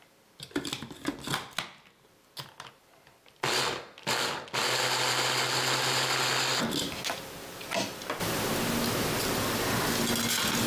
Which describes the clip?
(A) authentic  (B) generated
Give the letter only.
A